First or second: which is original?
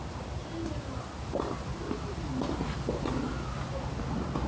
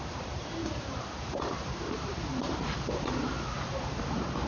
first